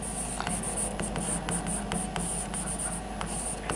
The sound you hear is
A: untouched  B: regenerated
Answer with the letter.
A